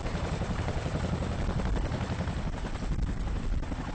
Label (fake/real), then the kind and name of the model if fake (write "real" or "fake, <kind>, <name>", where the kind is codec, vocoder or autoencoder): real